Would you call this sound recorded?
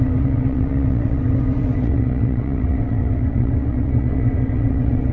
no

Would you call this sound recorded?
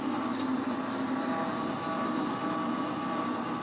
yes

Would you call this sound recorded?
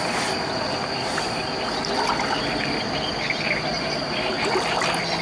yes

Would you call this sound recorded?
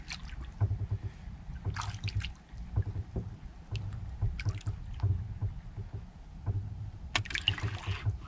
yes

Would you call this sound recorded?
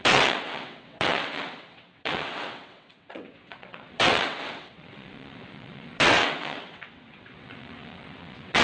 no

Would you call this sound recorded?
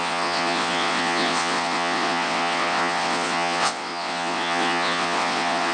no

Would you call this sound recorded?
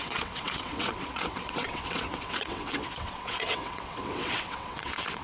no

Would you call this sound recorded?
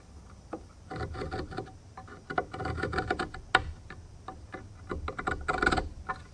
yes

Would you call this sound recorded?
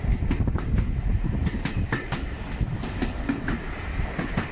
yes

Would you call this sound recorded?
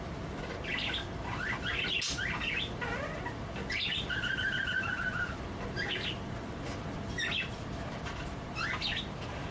yes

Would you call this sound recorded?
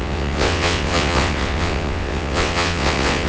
no